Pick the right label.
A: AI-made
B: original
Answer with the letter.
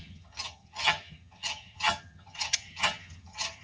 A